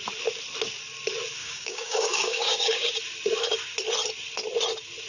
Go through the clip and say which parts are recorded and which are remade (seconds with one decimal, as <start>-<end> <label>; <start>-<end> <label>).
0.0-1.4 recorded; 1.4-2.9 remade; 2.9-5.1 recorded

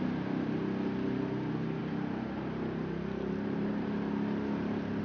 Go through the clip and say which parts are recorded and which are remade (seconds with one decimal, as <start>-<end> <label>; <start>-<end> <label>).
0.0-5.0 recorded

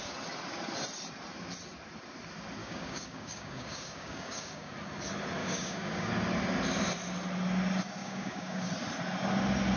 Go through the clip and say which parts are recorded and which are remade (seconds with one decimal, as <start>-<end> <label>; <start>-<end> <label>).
0.0-2.6 recorded; 2.6-4.7 remade; 4.7-5.4 recorded; 5.4-6.1 remade; 6.1-8.0 recorded; 8.0-8.7 remade; 8.7-9.8 recorded

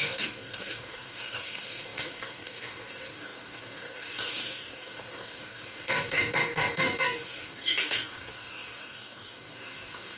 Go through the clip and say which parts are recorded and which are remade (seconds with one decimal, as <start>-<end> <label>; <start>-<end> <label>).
0.0-10.2 remade

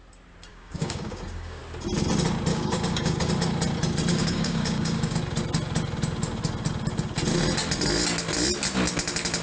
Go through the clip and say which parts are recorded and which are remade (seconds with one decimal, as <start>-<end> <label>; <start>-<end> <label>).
0.0-0.5 recorded; 0.5-1.6 remade; 1.6-2.5 recorded; 2.5-3.3 remade; 3.3-4.1 recorded; 4.1-5.2 remade; 5.2-9.4 recorded

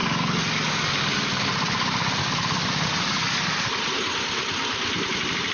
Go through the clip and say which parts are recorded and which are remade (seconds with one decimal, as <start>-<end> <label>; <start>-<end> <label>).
0.0-1.5 remade; 1.5-2.2 recorded; 2.2-3.8 remade; 3.8-5.5 recorded

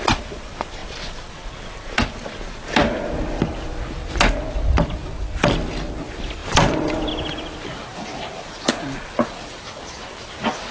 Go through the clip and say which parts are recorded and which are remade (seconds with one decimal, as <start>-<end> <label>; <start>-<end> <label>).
0.0-10.7 recorded